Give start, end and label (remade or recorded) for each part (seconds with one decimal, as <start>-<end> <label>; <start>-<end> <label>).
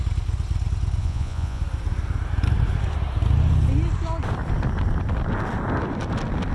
0.0-1.0 recorded; 1.0-1.6 remade; 1.6-6.5 recorded